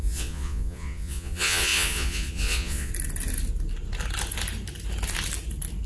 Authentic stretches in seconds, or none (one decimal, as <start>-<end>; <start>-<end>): 2.9-5.9